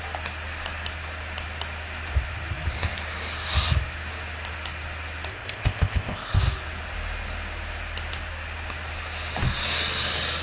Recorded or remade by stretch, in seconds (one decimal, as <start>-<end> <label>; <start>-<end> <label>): 0.0-5.3 recorded; 5.3-6.4 remade; 6.4-10.4 recorded